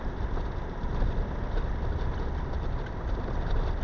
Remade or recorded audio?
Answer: recorded